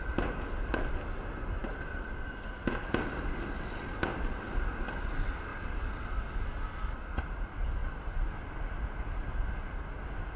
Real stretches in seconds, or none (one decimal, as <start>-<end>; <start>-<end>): 0.0-10.4